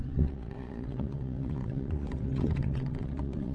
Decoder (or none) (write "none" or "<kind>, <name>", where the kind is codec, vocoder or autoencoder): vocoder, WaveNeXt